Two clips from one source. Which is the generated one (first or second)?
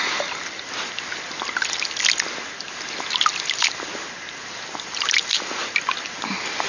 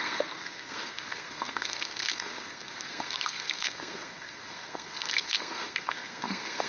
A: second